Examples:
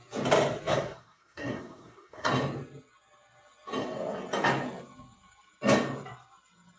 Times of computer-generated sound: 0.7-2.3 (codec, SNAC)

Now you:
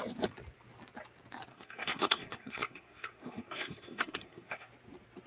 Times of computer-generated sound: 1.5-4.7 (codec, SNAC)

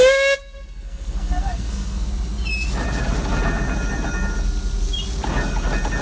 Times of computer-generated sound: 0.4-2.1 (codec, SNAC)

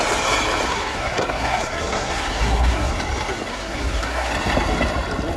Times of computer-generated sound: 0.7-2.9 (codec, SNAC); 3.5-4.3

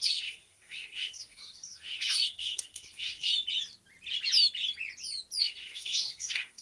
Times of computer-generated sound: 0.0-3.3 (codec, SNAC); 5.4-6.6